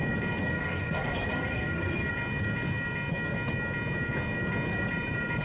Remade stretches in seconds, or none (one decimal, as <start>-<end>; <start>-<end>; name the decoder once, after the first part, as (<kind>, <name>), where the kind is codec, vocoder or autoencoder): 0.5-2.1 (codec, SNAC)